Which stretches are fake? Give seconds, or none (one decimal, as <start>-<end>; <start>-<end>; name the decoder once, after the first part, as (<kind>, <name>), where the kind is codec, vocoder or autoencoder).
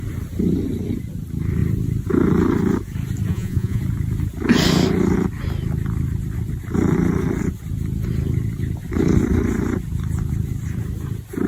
3.3-3.8 (vocoder, Vocos)